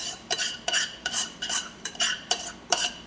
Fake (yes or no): yes